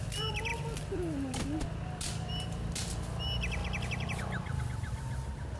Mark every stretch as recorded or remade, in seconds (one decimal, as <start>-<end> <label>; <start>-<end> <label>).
0.0-5.6 recorded